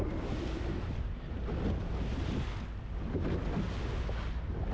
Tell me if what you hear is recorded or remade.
recorded